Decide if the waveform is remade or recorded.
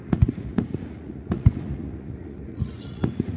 remade